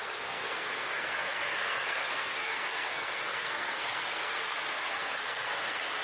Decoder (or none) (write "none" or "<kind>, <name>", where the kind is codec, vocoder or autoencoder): codec, SNAC